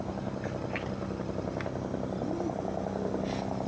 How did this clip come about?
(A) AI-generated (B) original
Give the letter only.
B